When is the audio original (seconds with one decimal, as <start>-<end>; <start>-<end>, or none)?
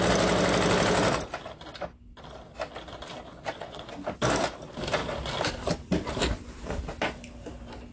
0.0-3.3; 3.9-7.9